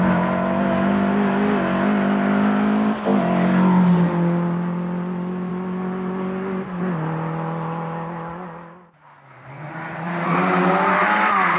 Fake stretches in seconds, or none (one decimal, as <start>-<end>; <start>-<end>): none